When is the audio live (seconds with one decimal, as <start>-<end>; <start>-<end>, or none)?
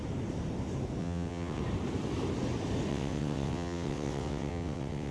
0.0-1.0; 1.6-2.9